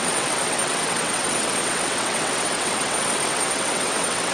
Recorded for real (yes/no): no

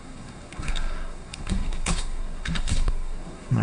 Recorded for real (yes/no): no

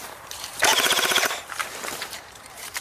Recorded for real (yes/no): no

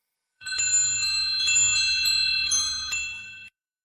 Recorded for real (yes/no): no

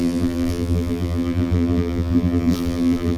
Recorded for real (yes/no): no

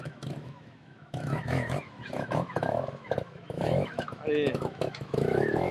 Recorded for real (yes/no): no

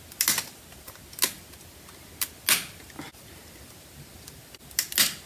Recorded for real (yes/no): yes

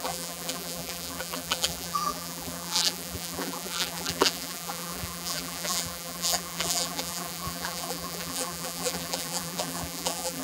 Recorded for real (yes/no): no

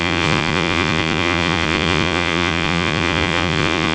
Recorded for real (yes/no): no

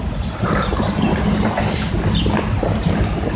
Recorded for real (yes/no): yes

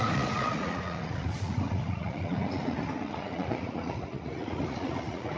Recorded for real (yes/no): no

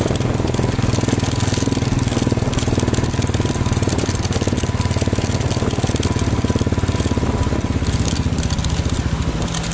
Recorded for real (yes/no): yes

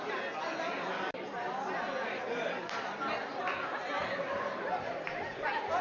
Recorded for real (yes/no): yes